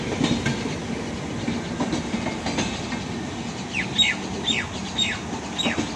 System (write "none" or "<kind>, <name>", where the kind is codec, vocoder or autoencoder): none